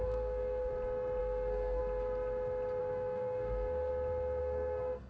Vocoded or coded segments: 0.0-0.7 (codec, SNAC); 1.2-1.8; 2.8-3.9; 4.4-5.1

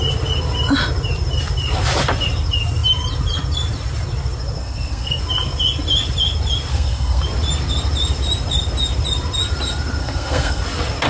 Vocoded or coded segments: 4.6-5.2 (codec, SNAC); 6.7-7.2; 10.0-10.6

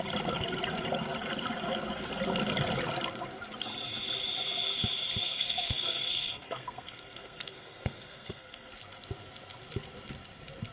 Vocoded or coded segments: 5.2-8.7 (codec, SNAC)